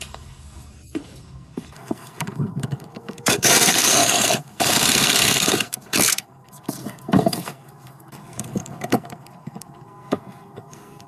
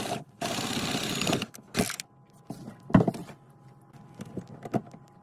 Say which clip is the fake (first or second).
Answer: first